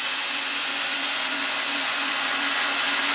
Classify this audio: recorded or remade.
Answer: remade